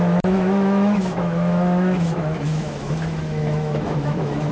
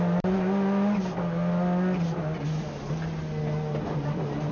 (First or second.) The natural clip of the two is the second